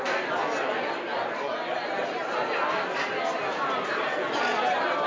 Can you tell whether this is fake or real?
real